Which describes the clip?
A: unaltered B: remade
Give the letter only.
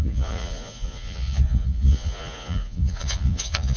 B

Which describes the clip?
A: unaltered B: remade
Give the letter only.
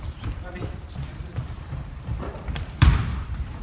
B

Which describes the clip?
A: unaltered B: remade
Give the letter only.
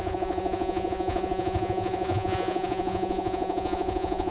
B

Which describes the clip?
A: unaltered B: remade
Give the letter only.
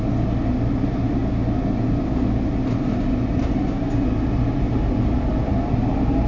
A